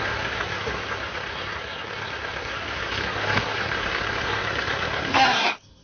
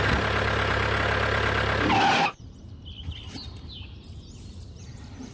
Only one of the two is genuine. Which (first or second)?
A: second